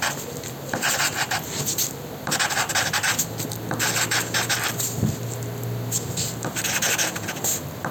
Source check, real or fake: real